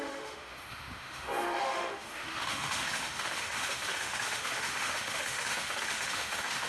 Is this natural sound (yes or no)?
no